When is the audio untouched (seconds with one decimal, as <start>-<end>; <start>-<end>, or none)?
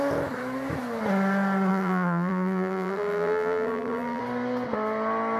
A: 0.0-1.7; 4.2-5.4